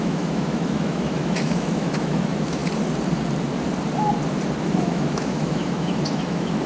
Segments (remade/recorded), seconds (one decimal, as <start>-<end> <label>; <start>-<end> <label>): 0.0-2.6 remade; 2.6-4.6 recorded; 4.6-6.7 remade